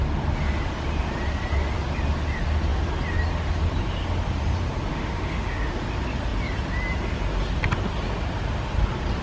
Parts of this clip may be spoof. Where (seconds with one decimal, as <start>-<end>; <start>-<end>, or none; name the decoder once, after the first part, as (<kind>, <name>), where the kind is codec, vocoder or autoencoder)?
4.9-5.7 (autoencoder, DAC-VAE)

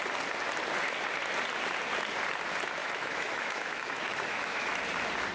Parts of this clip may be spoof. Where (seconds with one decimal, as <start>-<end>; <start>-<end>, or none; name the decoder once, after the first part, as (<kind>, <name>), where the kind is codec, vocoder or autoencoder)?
2.8-4.8 (autoencoder, DAC-VAE)

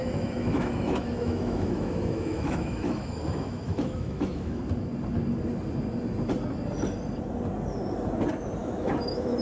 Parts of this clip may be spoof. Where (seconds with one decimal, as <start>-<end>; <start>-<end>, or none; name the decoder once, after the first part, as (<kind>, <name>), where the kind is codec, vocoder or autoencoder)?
0.0-4.6 (autoencoder, DAC-VAE); 8.6-9.4

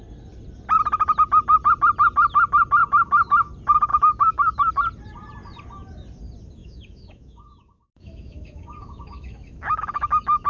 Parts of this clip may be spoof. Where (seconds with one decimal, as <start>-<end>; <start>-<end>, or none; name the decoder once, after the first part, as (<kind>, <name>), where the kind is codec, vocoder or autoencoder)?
2.8-3.5 (autoencoder, DAC-VAE); 3.9-4.7; 6.6-10.5

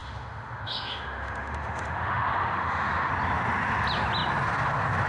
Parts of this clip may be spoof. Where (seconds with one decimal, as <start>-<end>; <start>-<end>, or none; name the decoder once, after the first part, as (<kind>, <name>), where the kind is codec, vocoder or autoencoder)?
0.0-3.1 (autoencoder, DAC-VAE)